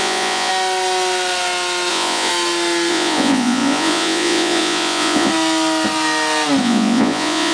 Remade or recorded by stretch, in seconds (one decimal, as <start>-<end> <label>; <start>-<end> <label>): 0.0-0.5 remade; 0.5-1.9 recorded; 1.9-2.3 remade; 2.3-2.9 recorded; 2.9-5.3 remade; 5.3-6.6 recorded; 6.6-7.5 remade